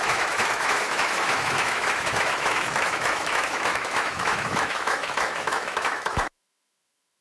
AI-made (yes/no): yes